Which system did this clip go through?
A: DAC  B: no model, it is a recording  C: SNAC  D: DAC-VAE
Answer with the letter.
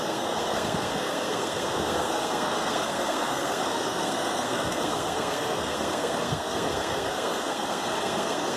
C